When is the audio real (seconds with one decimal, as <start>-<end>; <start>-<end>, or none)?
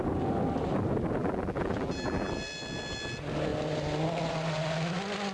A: 0.0-1.2; 2.3-5.3